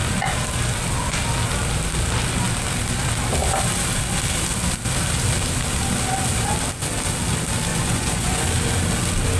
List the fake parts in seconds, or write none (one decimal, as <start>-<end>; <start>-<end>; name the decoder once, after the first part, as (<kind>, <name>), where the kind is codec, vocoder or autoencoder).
7.7-8.4 (vocoder, Vocos)